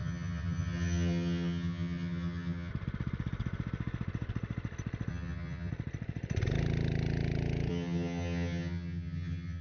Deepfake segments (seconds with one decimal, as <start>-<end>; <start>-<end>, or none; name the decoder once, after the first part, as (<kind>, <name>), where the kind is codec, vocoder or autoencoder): 0.0-2.7 (vocoder, HiFi-GAN); 5.1-5.7; 7.7-9.6